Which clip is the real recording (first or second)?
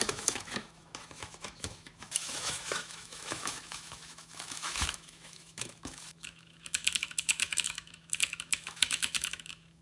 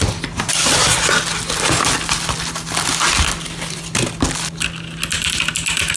second